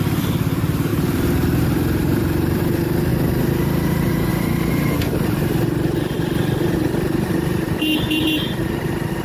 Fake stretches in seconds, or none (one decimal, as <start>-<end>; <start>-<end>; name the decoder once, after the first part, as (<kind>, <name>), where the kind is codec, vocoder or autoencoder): 0.0-3.1 (vocoder, BigVGAN v2); 4.3-9.2